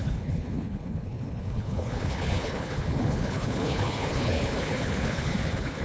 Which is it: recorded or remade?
remade